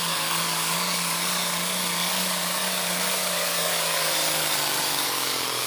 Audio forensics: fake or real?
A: fake